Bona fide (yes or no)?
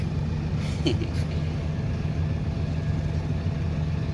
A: yes